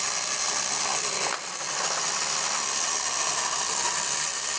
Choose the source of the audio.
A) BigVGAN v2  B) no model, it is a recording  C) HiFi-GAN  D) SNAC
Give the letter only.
B